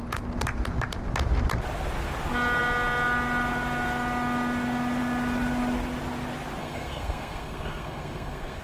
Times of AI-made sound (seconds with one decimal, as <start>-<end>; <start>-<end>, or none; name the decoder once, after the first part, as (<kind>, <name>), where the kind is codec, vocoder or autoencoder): 6.6-8.6 (codec, SNAC)